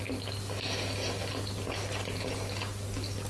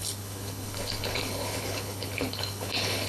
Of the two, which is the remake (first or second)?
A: second